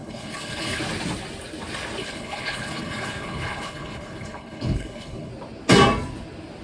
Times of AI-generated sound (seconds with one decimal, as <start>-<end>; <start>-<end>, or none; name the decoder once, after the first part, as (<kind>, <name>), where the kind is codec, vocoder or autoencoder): 0.0-0.8 (codec, HILCodec); 2.0-5.3